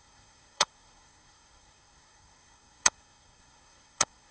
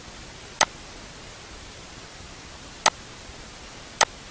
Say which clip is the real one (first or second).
second